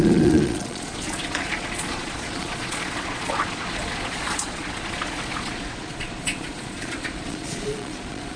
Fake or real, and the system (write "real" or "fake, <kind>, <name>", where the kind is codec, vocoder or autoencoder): fake, vocoder, Vocos